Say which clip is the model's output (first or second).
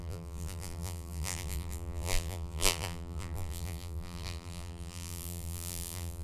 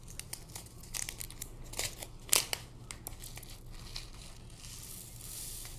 first